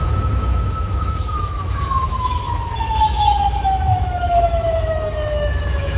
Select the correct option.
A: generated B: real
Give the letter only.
A